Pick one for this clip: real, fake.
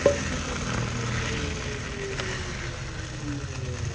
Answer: real